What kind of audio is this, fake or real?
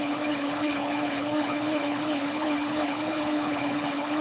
fake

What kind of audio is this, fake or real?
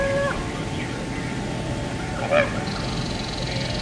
real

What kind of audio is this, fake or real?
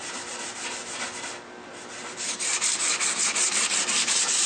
fake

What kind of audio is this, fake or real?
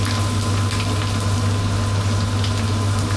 real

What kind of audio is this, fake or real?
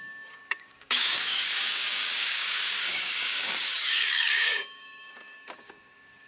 fake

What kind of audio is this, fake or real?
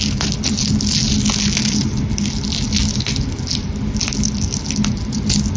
real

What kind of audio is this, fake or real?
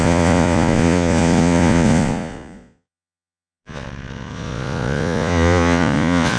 fake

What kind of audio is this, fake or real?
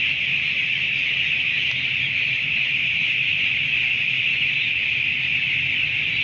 fake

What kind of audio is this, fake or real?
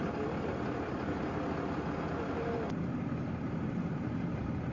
real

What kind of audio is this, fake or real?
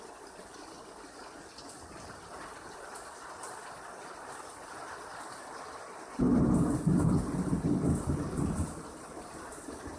real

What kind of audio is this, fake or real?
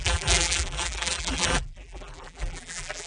fake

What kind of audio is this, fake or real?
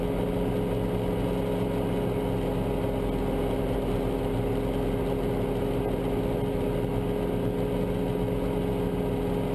real